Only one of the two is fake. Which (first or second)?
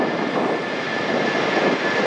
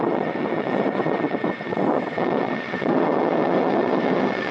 second